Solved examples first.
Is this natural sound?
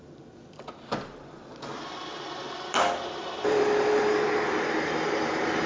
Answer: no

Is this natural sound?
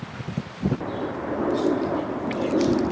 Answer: yes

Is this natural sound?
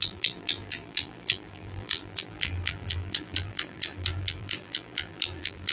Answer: no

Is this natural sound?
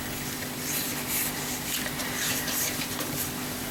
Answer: yes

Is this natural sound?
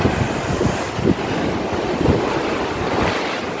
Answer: yes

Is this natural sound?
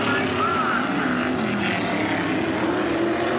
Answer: yes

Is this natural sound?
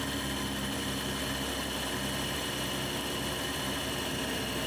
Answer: yes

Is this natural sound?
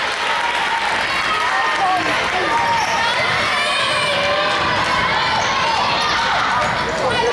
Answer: yes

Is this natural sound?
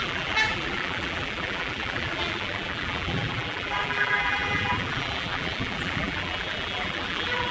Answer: no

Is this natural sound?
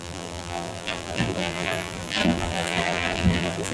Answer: no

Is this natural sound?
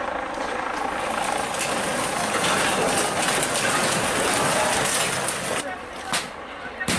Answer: yes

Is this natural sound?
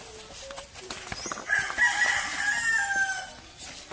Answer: yes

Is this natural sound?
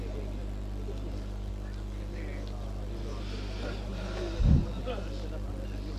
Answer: no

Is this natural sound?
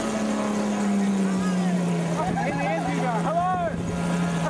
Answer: yes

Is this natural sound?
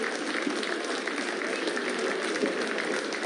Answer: yes